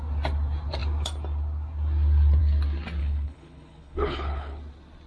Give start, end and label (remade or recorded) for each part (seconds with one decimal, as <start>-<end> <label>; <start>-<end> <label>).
0.0-3.0 recorded; 3.0-4.6 remade; 4.6-5.1 recorded